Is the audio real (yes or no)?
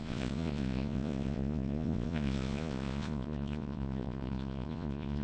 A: no